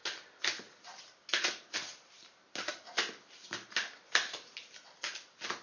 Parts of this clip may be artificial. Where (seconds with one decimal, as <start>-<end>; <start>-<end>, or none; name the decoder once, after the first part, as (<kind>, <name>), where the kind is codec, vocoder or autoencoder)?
none